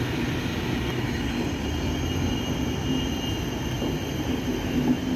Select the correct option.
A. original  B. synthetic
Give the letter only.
A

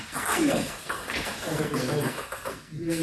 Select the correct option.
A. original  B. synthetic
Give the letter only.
B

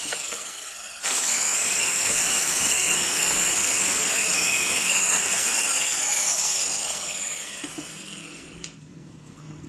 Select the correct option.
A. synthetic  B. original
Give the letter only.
A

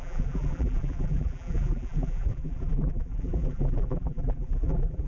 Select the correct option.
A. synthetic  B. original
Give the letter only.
A